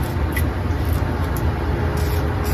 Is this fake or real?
real